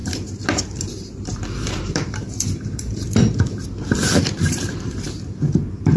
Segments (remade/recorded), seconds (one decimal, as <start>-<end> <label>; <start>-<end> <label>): 0.0-6.0 remade